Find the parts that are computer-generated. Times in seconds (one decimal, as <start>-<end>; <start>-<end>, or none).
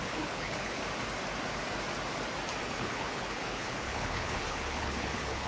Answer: 0.0-0.8; 2.6-5.5